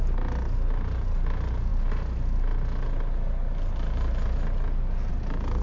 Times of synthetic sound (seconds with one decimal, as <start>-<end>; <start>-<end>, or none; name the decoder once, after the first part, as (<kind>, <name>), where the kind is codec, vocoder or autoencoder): none